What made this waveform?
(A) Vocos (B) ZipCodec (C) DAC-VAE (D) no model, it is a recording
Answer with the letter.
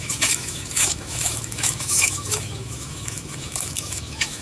C